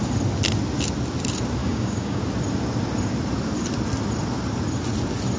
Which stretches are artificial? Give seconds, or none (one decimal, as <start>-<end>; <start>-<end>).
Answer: 1.6-2.2